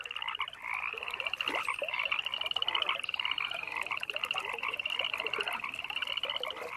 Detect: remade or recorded recorded